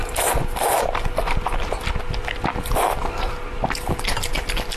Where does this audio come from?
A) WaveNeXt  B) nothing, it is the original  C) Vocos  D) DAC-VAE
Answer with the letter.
B